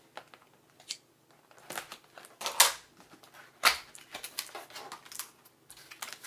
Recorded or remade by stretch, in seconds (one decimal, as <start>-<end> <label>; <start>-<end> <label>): 0.0-6.3 recorded